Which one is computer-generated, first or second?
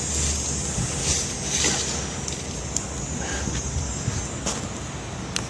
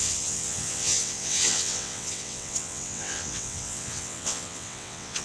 second